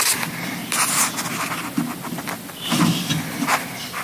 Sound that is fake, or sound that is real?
real